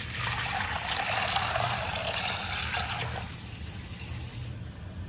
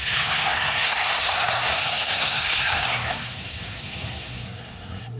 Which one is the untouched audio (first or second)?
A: first